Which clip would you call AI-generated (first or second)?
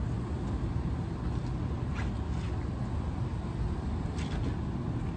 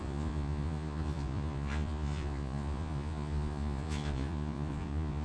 second